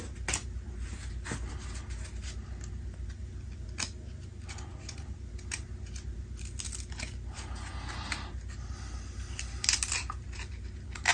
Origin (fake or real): real